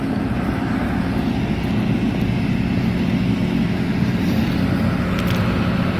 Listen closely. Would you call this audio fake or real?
real